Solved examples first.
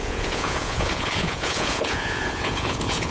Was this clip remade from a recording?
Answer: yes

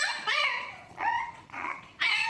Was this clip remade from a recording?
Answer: yes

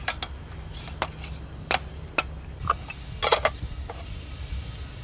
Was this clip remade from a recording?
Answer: no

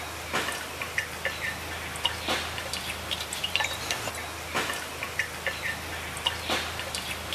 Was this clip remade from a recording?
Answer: no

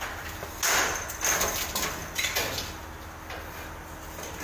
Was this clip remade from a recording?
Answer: no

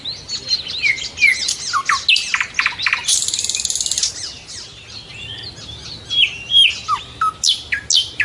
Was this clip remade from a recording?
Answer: no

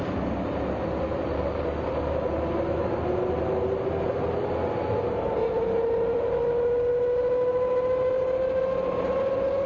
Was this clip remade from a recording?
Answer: no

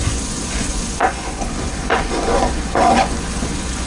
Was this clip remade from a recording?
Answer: yes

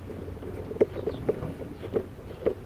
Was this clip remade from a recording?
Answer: no